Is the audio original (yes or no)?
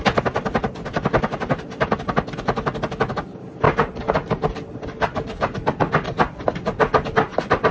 yes